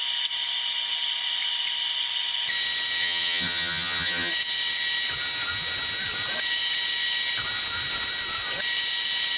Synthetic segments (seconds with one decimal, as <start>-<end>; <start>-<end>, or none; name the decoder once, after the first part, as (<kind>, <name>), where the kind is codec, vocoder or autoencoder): 3.0-4.3 (vocoder, HiFi-GAN)